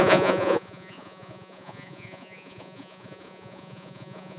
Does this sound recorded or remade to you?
remade